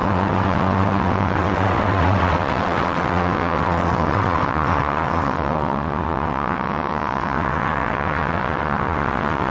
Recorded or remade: remade